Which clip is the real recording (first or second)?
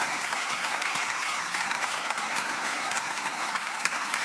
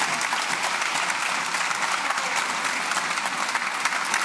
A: second